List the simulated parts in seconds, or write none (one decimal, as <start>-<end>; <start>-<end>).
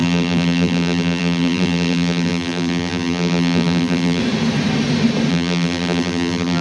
0.0-4.2; 5.3-6.6